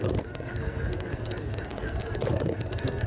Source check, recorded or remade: remade